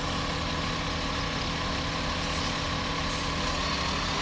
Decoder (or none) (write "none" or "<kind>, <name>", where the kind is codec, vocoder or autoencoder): none